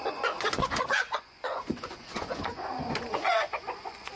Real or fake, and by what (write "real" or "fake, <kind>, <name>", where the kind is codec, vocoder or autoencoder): fake, vocoder, Vocos